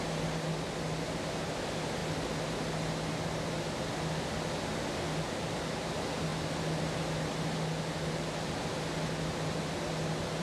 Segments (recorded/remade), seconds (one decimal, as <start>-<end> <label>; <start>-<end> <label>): 0.0-10.4 recorded